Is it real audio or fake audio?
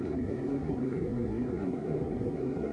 fake